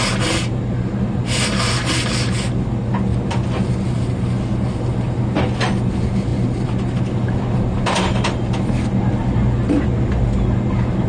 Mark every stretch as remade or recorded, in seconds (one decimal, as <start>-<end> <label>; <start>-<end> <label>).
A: 0.0-11.1 recorded